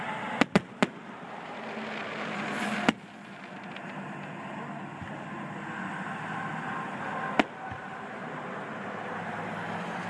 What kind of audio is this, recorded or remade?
recorded